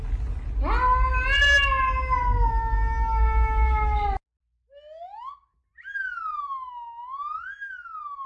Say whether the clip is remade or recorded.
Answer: recorded